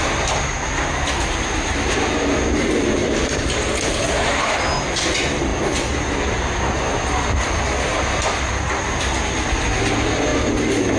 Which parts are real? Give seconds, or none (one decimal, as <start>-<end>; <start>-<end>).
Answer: 0.0-3.0; 3.6-11.0